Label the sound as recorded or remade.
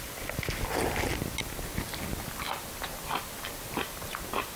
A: recorded